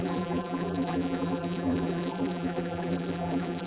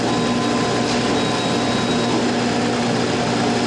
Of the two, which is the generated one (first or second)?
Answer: first